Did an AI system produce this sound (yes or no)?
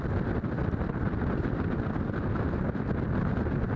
no